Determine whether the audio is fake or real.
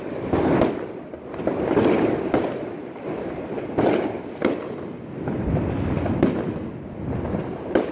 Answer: real